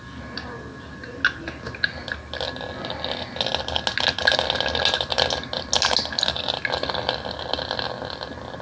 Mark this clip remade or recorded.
recorded